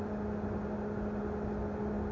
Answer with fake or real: real